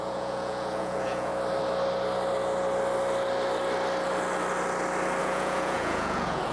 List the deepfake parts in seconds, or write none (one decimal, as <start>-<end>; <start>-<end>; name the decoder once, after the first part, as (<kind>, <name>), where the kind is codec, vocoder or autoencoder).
0.0-1.3 (vocoder, Vocos); 5.2-6.5